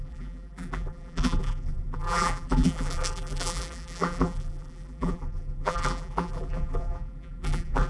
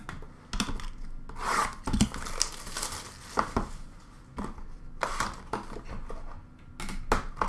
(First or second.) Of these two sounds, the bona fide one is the second